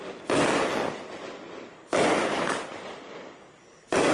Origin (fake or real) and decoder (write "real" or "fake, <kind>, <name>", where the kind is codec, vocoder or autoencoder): real